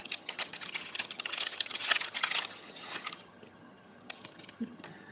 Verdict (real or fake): fake